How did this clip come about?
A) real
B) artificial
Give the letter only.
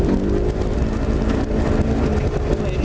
A